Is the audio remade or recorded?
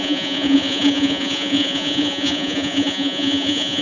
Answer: remade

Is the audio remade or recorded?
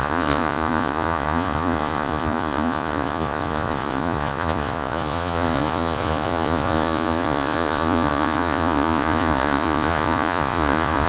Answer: remade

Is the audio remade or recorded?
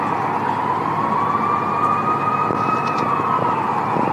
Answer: recorded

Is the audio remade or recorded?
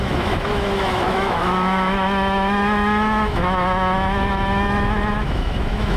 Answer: remade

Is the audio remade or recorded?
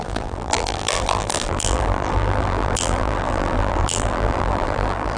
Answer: remade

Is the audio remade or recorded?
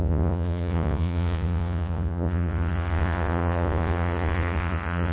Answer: remade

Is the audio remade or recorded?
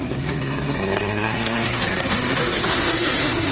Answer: remade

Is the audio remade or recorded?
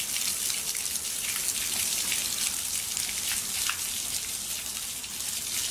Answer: recorded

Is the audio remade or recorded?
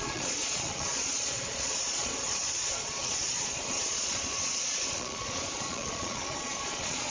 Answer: remade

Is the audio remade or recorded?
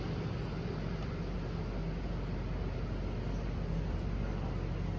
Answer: recorded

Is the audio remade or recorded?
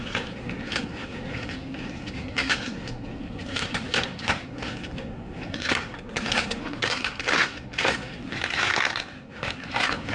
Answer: remade